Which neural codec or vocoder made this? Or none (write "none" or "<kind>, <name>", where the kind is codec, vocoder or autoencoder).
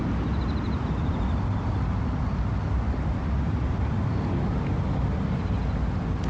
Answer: none